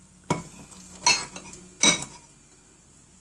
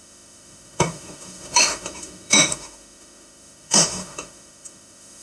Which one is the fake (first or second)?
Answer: second